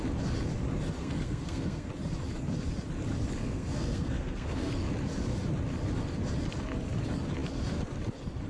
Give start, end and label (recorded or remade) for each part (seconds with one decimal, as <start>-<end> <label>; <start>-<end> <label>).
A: 0.0-1.0 recorded; 1.0-1.9 remade; 1.9-3.4 recorded; 3.4-4.7 remade; 4.7-8.5 recorded